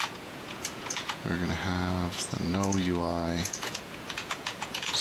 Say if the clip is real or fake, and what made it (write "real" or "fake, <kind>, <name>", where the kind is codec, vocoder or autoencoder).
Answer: fake, vocoder, Vocos